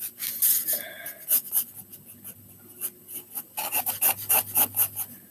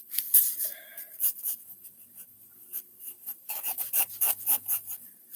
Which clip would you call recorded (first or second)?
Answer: first